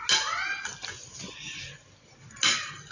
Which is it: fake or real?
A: real